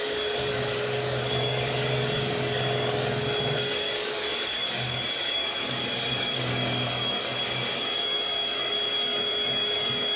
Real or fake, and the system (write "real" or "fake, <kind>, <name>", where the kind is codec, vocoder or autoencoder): fake, codec, DAC